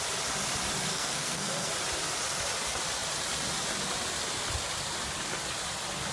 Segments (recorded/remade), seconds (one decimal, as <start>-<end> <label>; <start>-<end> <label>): 0.0-0.9 recorded; 0.9-1.7 remade; 1.7-6.1 recorded